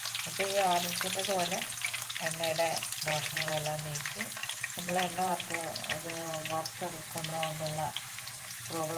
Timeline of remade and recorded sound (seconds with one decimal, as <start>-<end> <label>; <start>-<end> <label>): 0.0-2.5 recorded; 2.5-3.5 remade; 3.5-4.4 recorded; 4.4-6.5 remade; 6.5-7.3 recorded; 7.3-9.0 remade